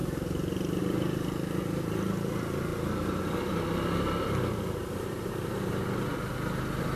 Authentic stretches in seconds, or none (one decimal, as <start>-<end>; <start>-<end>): 0.0-7.0